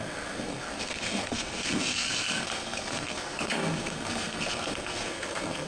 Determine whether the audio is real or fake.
fake